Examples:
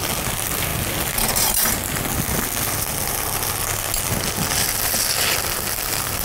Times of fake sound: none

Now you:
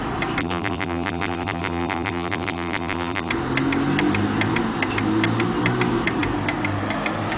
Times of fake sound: 0.4-3.3 (vocoder, BigVGAN v2)

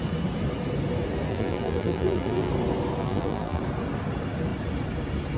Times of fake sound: 1.3-2.5 (vocoder, BigVGAN v2); 3.0-3.6

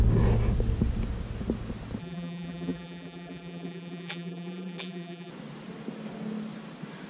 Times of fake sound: 2.0-5.3 (vocoder, BigVGAN v2)